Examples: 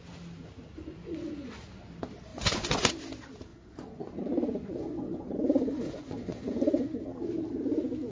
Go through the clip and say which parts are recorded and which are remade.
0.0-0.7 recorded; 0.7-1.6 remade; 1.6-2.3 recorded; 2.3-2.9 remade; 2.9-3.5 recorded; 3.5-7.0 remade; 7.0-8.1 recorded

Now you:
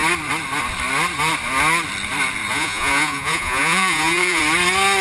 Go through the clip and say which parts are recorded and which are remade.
0.0-2.5 recorded; 2.5-4.4 remade; 4.4-5.0 recorded

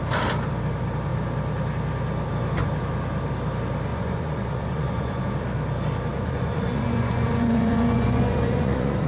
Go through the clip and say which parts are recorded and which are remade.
0.0-3.9 recorded; 3.9-5.2 remade; 5.2-6.1 recorded; 6.1-9.1 remade

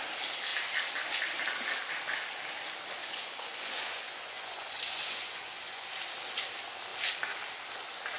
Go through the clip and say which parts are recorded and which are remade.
0.0-3.0 recorded; 3.0-5.9 remade; 5.9-8.2 recorded